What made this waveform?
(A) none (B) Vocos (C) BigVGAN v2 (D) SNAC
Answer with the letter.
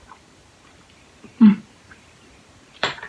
C